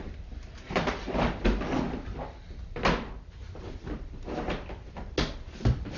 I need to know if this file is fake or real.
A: real